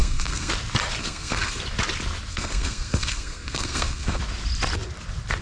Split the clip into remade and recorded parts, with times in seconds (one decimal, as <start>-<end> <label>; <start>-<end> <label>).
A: 0.0-0.5 remade; 0.5-1.0 recorded; 1.0-1.6 remade; 1.6-2.3 recorded; 2.3-4.2 remade; 4.2-5.4 recorded